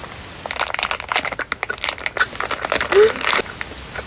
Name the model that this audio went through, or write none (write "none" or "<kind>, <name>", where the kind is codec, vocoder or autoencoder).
none